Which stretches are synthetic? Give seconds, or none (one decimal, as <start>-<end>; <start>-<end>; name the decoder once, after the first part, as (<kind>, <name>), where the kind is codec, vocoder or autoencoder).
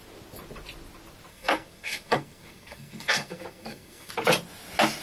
1.3-4.1 (codec, SNAC)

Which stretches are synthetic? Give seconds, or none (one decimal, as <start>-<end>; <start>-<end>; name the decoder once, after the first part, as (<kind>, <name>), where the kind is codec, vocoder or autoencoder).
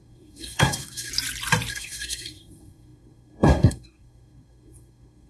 0.0-1.1 (codec, SNAC); 1.7-5.3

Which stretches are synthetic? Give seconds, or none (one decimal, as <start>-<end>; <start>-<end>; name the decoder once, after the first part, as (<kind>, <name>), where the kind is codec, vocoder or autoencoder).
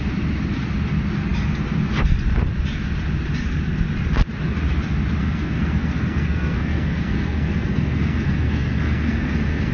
5.2-9.7 (codec, SNAC)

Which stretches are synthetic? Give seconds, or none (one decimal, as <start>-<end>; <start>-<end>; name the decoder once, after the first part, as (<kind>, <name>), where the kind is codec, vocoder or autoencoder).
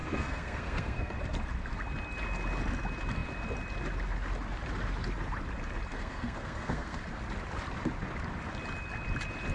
0.0-1.2 (codec, SNAC); 5.9-7.0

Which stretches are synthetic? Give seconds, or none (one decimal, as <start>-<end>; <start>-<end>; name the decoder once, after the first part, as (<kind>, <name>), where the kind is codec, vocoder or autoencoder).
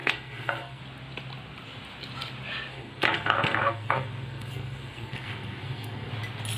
0.0-0.8 (codec, SNAC); 2.7-6.1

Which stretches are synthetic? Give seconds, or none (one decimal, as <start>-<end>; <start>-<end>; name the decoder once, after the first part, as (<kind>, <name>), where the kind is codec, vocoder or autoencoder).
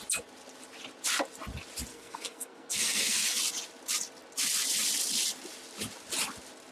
1.9-3.4 (codec, SNAC)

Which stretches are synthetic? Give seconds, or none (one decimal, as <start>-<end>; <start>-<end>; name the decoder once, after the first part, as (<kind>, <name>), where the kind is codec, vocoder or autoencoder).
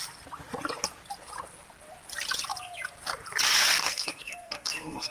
3.8-5.1 (codec, SNAC)